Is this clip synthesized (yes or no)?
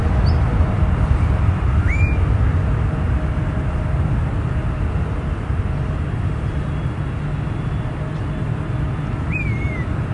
no